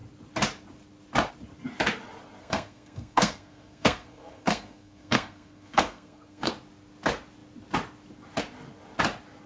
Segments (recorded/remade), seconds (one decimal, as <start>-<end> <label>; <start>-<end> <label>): 0.0-2.4 recorded; 2.4-6.5 remade; 6.5-9.5 recorded